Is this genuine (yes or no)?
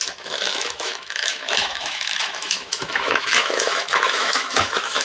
no